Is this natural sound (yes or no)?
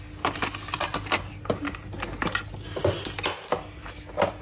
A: yes